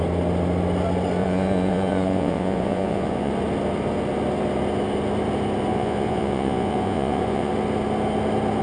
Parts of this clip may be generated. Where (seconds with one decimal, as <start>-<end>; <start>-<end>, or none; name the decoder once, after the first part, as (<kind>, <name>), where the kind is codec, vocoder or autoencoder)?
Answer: 1.2-3.3 (vocoder, Vocos); 5.7-7.5